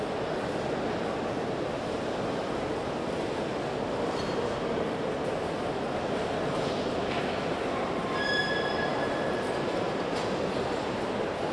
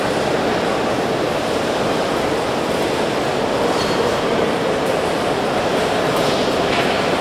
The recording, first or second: first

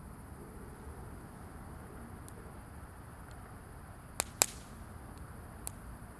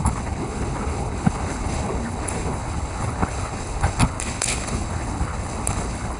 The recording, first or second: first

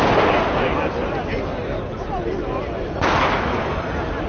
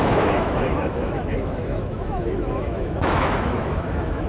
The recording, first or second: first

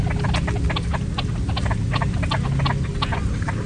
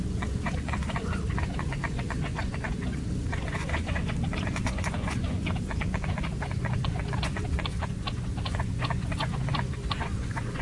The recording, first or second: first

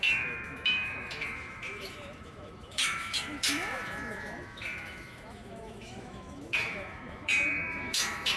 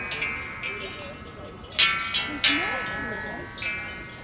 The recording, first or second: second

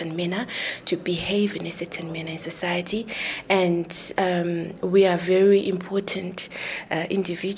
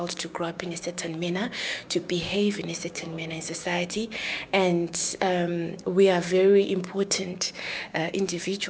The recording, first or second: first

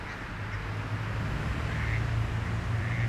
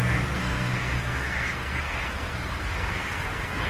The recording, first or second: first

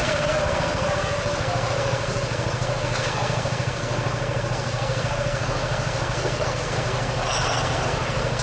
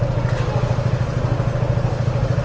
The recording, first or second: second